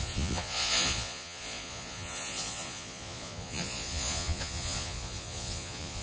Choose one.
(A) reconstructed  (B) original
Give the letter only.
A